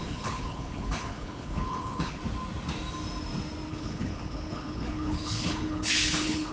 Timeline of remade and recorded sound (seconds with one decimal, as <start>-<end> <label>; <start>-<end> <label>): 0.0-2.2 remade; 2.2-3.7 recorded; 3.7-6.5 remade